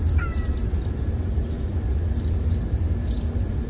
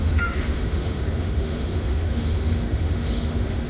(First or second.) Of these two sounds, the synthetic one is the second